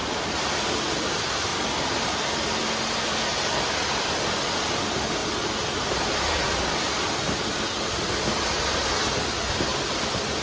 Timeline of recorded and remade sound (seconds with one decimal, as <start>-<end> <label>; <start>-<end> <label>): 0.0-10.4 recorded